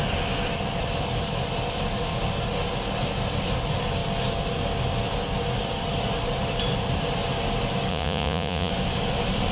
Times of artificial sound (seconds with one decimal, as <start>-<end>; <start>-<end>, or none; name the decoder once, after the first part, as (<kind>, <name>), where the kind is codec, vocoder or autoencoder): 7.9-8.7 (vocoder, Vocos)